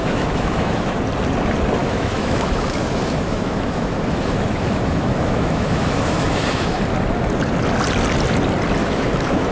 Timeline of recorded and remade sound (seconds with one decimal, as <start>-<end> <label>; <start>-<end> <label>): 0.0-1.0 remade; 1.0-1.8 recorded; 1.8-6.8 remade; 6.8-8.8 recorded; 8.8-9.5 remade